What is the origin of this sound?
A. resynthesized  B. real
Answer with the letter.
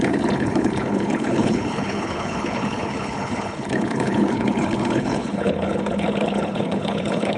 A